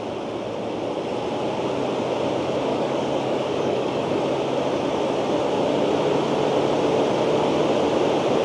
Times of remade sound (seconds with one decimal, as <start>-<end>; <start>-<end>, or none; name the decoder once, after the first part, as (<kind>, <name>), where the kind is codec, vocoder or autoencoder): 2.7-4.2 (codec, DAC)